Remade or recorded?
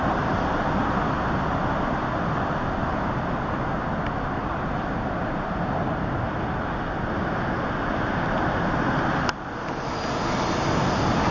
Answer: recorded